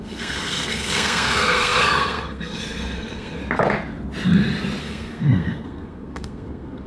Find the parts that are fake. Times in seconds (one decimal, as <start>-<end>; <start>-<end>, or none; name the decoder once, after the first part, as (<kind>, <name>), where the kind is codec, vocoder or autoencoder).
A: 0.0-3.4 (codec, SNAC); 4.8-6.9